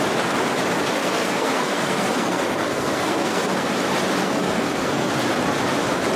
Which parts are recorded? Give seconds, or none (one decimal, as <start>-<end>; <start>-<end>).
0.0-1.0; 3.7-4.2; 5.1-6.2